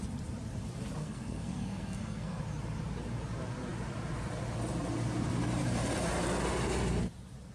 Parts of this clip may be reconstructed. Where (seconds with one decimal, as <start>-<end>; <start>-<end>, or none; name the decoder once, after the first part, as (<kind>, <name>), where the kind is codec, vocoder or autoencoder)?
1.0-2.4 (codec, SNAC)